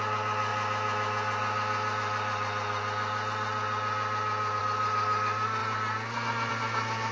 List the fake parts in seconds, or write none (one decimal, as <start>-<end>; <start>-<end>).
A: none